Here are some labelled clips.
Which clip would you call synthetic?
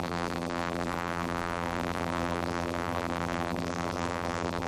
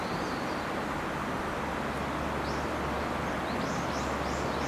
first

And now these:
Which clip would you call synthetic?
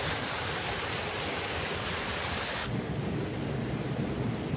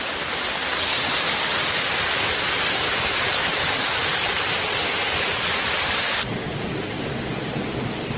second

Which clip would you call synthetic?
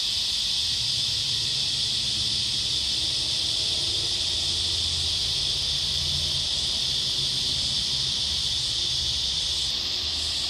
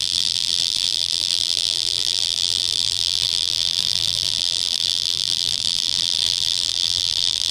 second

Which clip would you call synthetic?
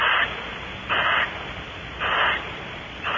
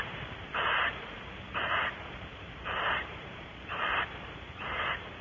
second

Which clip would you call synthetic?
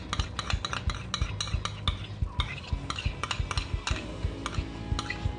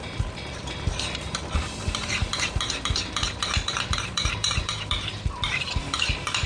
second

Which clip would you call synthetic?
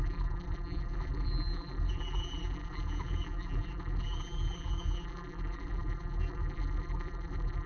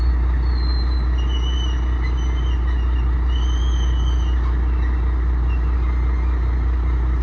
first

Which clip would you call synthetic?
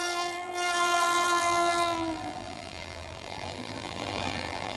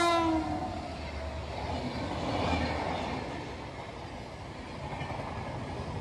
first